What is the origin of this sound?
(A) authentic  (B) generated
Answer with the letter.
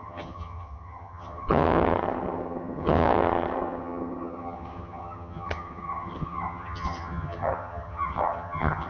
B